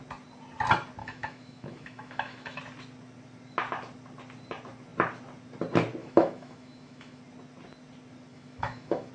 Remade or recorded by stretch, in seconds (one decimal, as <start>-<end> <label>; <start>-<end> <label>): 0.0-1.0 recorded; 1.0-2.6 remade; 2.6-6.0 recorded; 6.0-7.2 remade; 7.2-8.3 recorded; 8.3-9.1 remade